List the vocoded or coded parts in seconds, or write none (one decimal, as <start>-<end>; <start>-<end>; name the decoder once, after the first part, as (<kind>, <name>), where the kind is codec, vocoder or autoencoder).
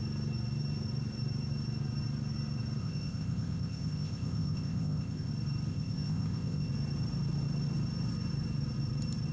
2.8-5.3 (codec, ZipCodec); 5.7-6.7